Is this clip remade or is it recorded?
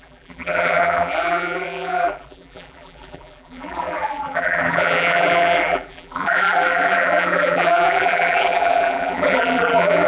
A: remade